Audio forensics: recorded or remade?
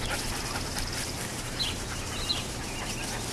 recorded